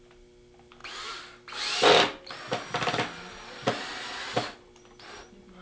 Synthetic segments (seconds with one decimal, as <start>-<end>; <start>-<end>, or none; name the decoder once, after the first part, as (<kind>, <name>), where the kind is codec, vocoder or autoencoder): none